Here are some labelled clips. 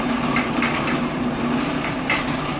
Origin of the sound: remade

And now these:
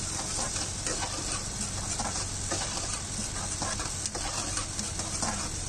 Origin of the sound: recorded